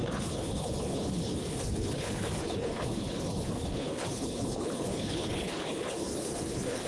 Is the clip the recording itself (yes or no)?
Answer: no